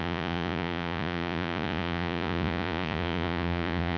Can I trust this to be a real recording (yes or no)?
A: no